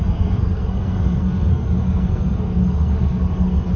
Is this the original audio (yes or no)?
no